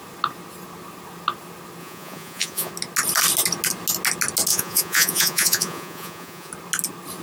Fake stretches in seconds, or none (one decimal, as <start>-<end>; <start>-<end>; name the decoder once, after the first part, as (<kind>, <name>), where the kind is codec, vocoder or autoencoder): 1.8-2.7 (vocoder, Vocos); 4.5-6.5